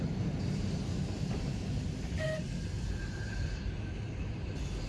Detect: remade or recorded recorded